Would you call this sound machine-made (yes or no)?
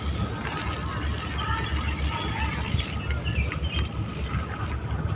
no